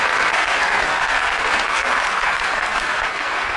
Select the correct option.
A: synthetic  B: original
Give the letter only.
A